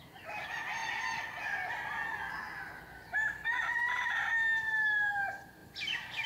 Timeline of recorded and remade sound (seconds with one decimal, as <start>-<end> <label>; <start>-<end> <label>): 0.0-6.3 recorded